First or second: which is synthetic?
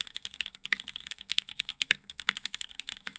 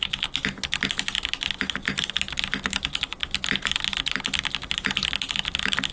first